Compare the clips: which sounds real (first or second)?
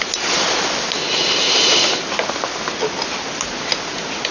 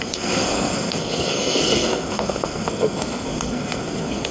first